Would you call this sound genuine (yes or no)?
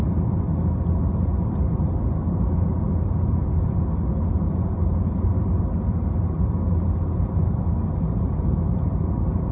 yes